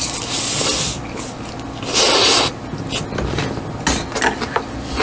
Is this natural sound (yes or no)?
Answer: yes